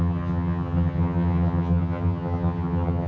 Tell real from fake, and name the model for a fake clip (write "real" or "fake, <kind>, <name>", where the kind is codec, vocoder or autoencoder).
fake, vocoder, HiFi-GAN